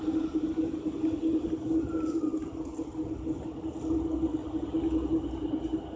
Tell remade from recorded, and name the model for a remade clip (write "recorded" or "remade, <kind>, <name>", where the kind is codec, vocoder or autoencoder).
recorded